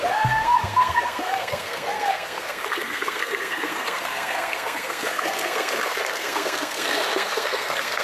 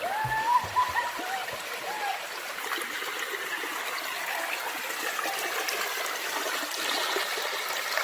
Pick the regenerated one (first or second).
first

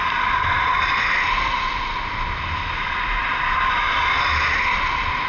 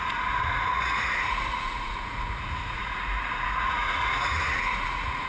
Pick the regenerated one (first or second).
second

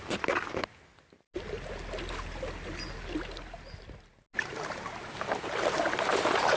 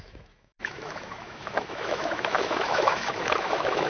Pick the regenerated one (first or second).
second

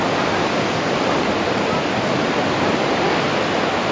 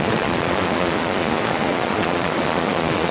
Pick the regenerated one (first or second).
second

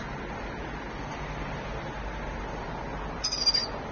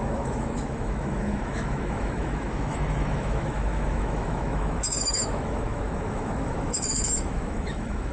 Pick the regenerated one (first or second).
second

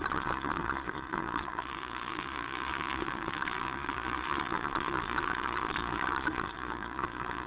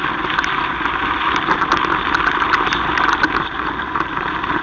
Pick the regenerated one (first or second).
first